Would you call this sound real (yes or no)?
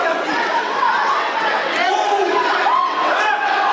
no